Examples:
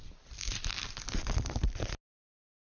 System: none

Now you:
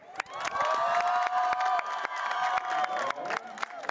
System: none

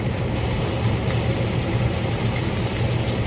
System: none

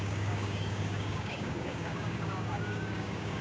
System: codec, DAC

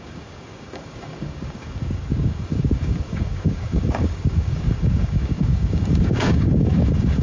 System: codec, DAC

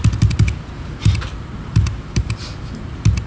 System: none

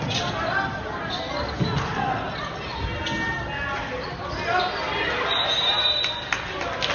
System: none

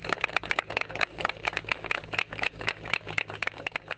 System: codec, DAC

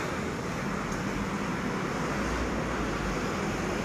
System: none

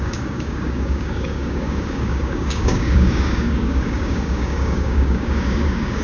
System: codec, DAC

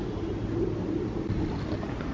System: none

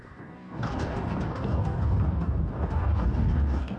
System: codec, DAC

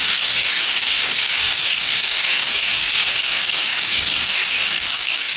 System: codec, DAC